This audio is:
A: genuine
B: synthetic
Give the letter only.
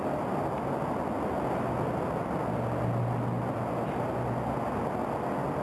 A